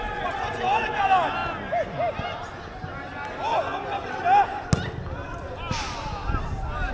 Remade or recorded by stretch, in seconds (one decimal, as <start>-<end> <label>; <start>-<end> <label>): 0.0-6.9 recorded